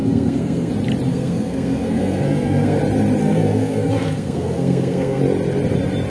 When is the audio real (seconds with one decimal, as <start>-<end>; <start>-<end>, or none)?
0.7-1.1; 2.8-3.2; 5.2-6.1